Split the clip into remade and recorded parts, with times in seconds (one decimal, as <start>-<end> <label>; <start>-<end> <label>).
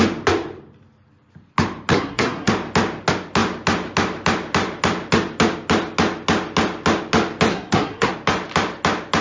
0.0-1.9 recorded; 1.9-2.5 remade; 2.5-7.5 recorded; 7.5-8.1 remade; 8.1-9.2 recorded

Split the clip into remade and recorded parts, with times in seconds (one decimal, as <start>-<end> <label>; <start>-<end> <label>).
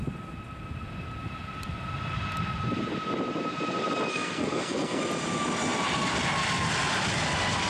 0.0-4.1 recorded; 4.1-5.0 remade; 5.0-7.7 recorded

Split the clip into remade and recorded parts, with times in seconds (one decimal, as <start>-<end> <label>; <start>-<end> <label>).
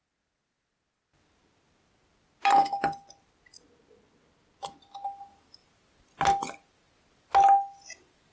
0.0-8.3 recorded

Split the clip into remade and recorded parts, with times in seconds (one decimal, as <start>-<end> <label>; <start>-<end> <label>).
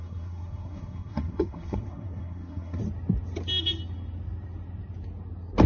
0.0-2.8 remade; 2.8-5.7 recorded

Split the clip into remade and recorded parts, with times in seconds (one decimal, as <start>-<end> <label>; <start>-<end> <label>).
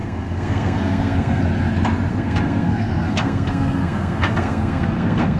0.0-1.4 remade; 1.4-2.1 recorded; 2.1-5.4 remade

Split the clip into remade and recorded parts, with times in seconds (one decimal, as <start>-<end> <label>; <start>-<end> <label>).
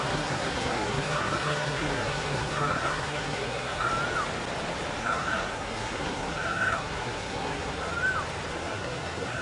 0.0-3.9 remade; 3.9-5.0 recorded; 5.0-7.9 remade; 7.9-8.5 recorded; 8.5-9.4 remade